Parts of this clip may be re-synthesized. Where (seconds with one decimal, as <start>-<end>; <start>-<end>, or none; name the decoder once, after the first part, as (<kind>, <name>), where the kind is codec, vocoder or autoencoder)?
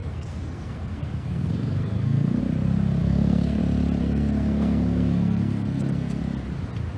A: 0.0-2.4 (codec, SNAC); 3.0-3.6; 4.0-6.2